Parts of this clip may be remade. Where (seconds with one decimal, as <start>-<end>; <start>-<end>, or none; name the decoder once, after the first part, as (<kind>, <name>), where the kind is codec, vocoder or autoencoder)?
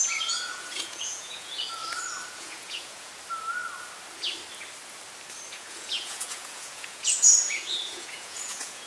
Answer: 0.0-1.8 (vocoder, Vocos); 2.3-3.1; 5.5-8.9